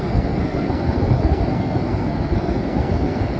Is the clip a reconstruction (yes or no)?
yes